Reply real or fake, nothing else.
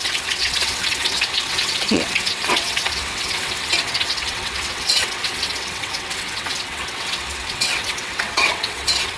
fake